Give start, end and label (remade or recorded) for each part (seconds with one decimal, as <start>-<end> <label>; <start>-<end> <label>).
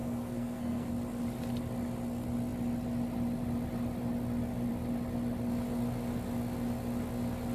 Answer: 0.0-0.9 remade; 0.9-7.5 recorded